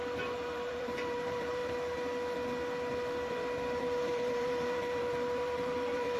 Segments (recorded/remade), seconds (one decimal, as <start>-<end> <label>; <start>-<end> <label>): 0.0-1.6 remade; 1.6-3.8 recorded; 3.8-6.2 remade